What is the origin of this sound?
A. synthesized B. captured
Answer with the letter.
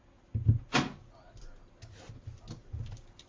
B